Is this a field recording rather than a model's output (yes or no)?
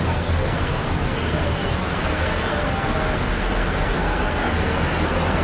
no